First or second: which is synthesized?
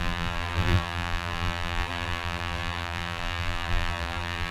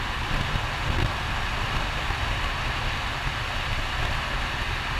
first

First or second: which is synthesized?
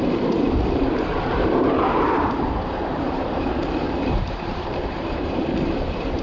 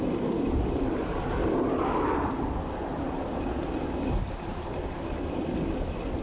first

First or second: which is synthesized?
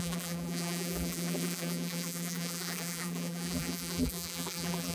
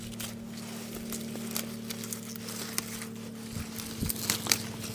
first